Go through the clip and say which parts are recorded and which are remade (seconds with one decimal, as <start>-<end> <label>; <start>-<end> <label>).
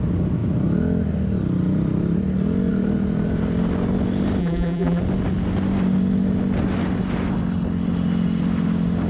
0.0-4.4 recorded; 4.4-5.0 remade; 5.0-9.1 recorded